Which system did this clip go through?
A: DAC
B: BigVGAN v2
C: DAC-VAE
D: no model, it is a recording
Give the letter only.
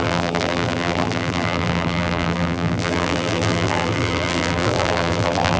B